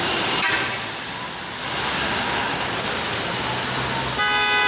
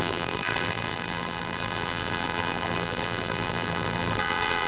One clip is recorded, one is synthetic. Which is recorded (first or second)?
first